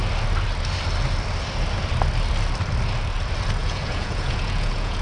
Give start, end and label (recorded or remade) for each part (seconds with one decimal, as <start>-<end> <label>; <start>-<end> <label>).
0.0-3.6 recorded; 3.6-5.0 remade